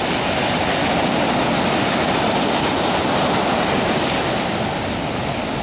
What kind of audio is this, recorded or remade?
recorded